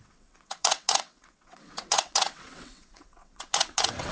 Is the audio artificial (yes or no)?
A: yes